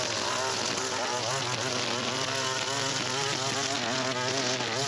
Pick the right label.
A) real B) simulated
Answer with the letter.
A